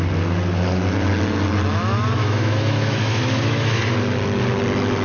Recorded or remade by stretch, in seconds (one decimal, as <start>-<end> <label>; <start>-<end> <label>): 0.0-2.2 recorded; 2.2-3.8 remade; 3.8-5.0 recorded